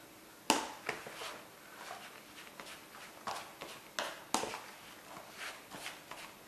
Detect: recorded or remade recorded